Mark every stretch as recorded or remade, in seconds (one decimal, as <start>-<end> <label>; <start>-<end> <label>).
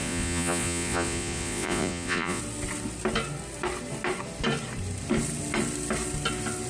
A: 0.0-2.4 remade; 2.4-6.7 recorded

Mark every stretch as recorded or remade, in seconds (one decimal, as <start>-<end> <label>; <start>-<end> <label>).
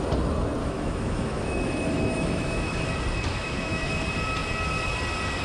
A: 0.0-0.6 recorded; 0.6-2.9 remade; 2.9-3.3 recorded; 3.3-3.9 remade; 3.9-5.4 recorded